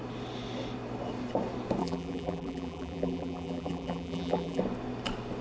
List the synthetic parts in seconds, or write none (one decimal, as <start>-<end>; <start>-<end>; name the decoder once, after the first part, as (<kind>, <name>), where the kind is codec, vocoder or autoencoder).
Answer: 1.8-4.6 (vocoder, BigVGAN v2)